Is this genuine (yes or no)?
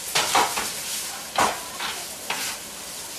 yes